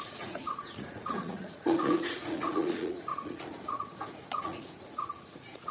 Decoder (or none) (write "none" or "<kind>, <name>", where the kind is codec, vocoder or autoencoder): vocoder, Vocos